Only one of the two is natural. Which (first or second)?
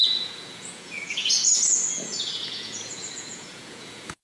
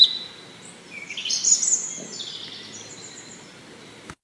second